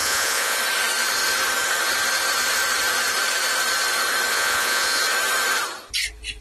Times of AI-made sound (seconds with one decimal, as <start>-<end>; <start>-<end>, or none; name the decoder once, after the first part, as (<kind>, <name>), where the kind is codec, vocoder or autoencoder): 0.0-0.6 (vocoder, Vocos); 4.3-5.0